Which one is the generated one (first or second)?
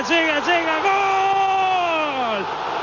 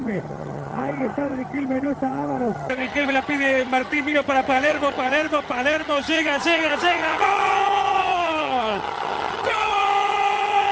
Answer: second